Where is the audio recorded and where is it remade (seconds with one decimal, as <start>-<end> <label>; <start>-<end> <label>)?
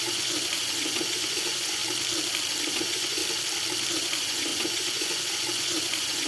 0.0-1.8 remade; 1.8-2.7 recorded; 2.7-3.2 remade; 3.2-3.9 recorded; 3.9-6.3 remade